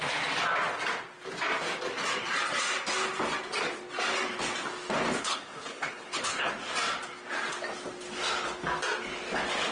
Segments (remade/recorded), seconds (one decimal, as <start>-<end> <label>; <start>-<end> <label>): 0.0-5.2 recorded; 5.2-6.5 remade; 6.5-9.7 recorded